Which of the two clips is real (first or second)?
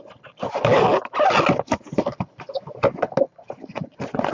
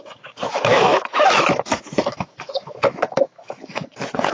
first